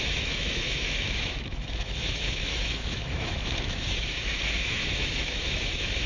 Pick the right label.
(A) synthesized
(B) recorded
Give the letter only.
A